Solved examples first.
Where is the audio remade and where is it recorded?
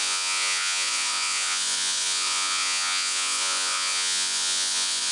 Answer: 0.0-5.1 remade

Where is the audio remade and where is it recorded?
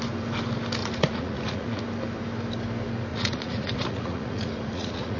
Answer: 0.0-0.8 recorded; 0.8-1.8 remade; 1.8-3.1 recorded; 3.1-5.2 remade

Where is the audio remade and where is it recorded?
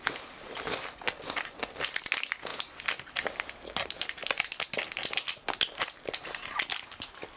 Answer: 0.0-7.4 recorded